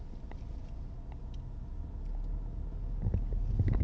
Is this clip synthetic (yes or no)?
no